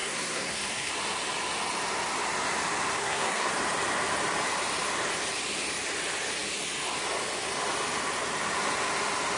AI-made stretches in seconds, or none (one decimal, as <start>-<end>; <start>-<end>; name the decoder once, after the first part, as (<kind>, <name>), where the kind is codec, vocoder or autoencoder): 0.0-0.9 (codec, SNAC); 3.0-3.5